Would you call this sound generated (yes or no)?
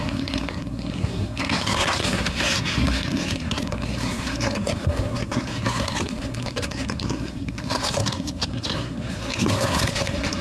yes